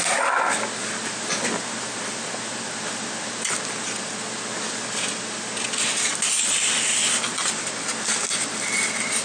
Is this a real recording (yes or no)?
yes